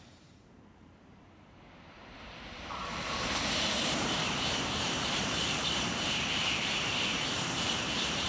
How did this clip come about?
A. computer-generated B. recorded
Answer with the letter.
A